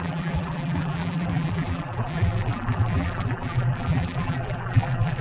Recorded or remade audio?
remade